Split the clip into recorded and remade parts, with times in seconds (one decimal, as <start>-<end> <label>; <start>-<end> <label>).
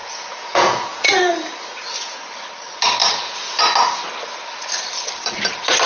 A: 0.0-1.2 remade; 1.2-3.0 recorded; 3.0-3.6 remade; 3.6-5.9 recorded